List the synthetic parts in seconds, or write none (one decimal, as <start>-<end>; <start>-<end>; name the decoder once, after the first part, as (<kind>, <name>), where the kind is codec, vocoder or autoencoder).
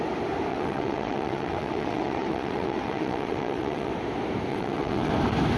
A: 0.5-3.9 (vocoder, WaveNeXt); 4.5-5.1